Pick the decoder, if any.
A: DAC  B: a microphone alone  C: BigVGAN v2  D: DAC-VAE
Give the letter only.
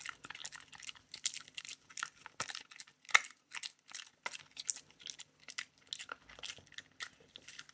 B